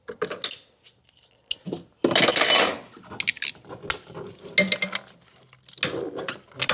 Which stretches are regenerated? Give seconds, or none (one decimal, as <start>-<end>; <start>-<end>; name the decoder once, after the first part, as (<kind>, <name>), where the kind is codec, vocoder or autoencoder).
none